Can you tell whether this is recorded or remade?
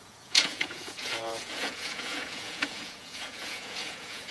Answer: remade